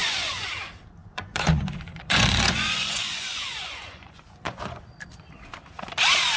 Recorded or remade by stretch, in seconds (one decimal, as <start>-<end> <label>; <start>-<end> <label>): 0.0-0.5 remade; 0.5-1.0 recorded; 1.0-4.8 remade; 4.8-6.4 recorded